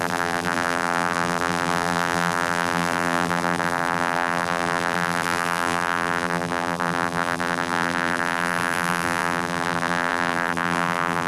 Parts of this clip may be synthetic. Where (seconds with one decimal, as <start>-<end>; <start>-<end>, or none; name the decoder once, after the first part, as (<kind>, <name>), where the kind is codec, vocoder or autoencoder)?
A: 0.0-11.3 (vocoder, BigVGAN v2)